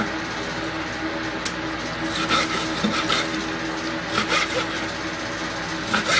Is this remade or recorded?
recorded